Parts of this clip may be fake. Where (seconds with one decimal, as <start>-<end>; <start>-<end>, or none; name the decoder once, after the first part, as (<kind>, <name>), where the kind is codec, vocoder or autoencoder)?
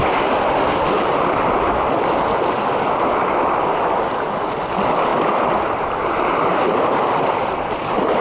5.1-7.1 (vocoder, BigVGAN v2)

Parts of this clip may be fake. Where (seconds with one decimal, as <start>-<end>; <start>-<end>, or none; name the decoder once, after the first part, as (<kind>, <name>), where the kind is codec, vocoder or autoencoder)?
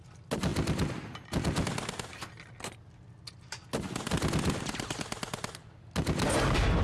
none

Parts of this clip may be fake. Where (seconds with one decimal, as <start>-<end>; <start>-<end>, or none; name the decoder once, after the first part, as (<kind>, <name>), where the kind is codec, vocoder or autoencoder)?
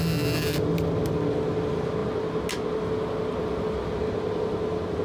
none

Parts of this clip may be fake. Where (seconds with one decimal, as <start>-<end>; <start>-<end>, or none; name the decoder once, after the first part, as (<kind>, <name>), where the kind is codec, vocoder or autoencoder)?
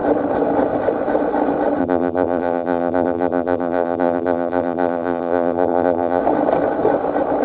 1.8-6.2 (vocoder, BigVGAN v2)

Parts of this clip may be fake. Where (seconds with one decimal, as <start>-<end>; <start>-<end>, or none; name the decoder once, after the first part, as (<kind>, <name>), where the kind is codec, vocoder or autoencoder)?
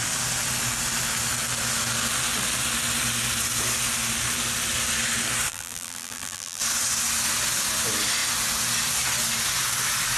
5.5-6.6 (vocoder, BigVGAN v2)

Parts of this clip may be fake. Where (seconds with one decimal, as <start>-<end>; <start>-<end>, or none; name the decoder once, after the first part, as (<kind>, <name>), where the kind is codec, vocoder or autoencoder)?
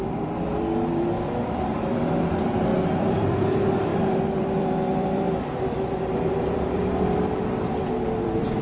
0.0-8.6 (vocoder, BigVGAN v2)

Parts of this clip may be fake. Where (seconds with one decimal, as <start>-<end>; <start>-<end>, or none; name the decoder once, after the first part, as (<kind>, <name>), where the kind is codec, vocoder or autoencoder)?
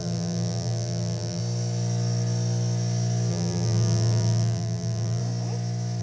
0.0-1.4 (vocoder, BigVGAN v2); 3.3-5.2